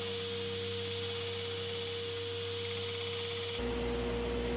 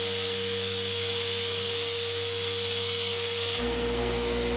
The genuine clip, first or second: first